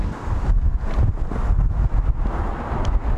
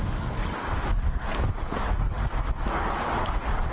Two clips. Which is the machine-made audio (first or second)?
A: second